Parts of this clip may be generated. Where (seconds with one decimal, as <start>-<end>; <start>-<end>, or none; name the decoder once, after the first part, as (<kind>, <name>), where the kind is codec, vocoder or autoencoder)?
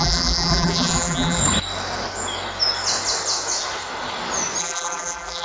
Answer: 0.0-1.4 (vocoder, BigVGAN v2); 4.6-5.4